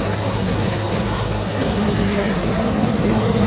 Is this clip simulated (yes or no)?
yes